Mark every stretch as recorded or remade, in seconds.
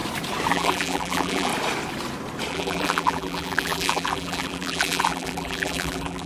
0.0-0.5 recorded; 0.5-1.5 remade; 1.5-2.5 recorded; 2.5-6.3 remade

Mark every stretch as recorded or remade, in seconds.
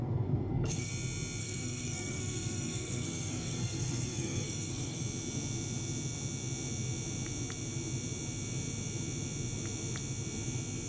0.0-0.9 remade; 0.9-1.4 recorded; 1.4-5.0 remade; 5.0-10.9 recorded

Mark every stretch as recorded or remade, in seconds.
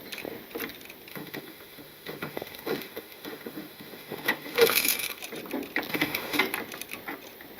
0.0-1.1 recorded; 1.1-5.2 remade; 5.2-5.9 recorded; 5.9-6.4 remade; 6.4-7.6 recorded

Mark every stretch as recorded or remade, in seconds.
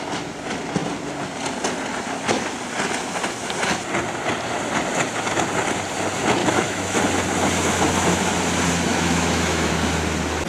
0.0-6.4 recorded; 6.4-7.0 remade; 7.0-8.9 recorded; 8.9-9.7 remade; 9.7-10.5 recorded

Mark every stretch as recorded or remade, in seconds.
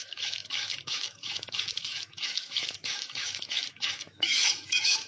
0.0-5.1 remade